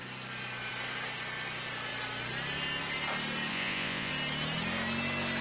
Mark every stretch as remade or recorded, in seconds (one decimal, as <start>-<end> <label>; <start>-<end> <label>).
0.0-3.5 recorded; 3.5-4.1 remade; 4.1-5.4 recorded